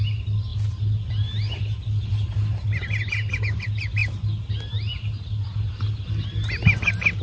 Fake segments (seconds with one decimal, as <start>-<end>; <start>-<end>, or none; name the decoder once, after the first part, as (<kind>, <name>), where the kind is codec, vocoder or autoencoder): none